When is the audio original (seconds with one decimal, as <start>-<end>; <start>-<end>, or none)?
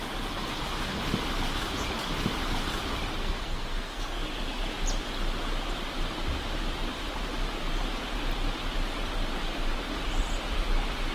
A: 0.0-3.2; 4.2-11.1